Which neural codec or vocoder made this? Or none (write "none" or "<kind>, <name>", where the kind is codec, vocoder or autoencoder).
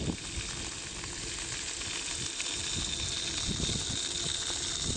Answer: none